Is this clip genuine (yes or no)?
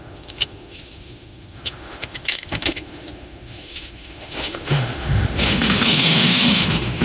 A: no